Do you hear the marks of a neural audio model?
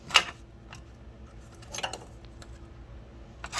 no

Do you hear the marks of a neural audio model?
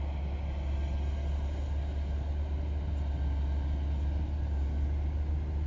no